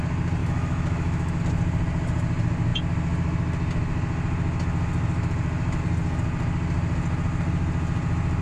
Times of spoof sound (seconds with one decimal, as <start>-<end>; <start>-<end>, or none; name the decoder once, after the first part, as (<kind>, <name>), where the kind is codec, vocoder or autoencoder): 0.4-1.4 (autoencoder, DAC-VAE)